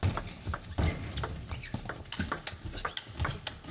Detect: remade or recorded recorded